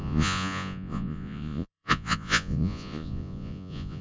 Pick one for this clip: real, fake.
fake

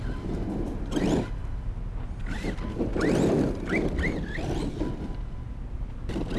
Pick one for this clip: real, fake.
real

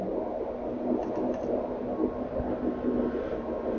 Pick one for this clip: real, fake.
real